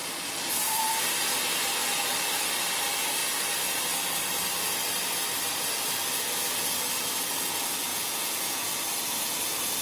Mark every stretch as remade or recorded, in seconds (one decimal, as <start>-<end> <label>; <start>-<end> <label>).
0.0-7.9 recorded; 7.9-8.6 remade; 8.6-9.8 recorded